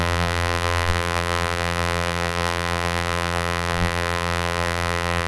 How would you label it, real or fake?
fake